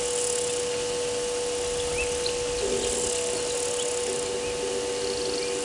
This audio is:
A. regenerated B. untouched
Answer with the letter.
B